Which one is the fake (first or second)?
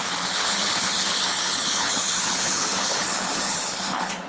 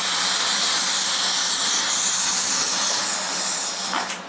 first